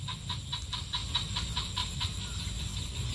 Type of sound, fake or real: fake